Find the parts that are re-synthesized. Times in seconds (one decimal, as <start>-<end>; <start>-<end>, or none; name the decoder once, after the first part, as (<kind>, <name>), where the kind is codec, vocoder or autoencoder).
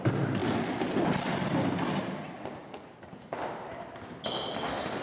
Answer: none